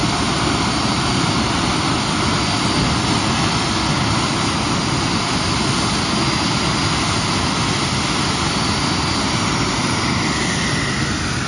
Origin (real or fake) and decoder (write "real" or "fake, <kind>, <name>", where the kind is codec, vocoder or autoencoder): real